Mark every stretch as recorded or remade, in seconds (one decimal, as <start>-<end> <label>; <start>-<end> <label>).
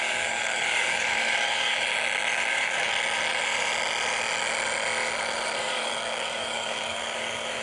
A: 0.0-1.9 remade; 1.9-2.5 recorded; 2.5-2.9 remade; 2.9-5.6 recorded; 5.6-7.6 remade